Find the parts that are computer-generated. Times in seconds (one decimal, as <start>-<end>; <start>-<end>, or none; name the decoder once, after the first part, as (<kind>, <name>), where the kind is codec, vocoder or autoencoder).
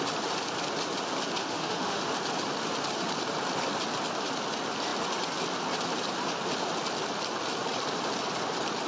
1.4-2.0 (autoencoder, DAC-VAE)